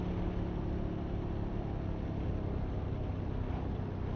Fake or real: real